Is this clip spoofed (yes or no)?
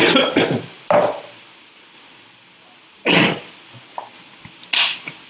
no